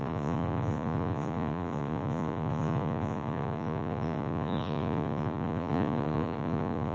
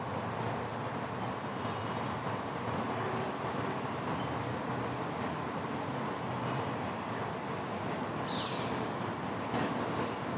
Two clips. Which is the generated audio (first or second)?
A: first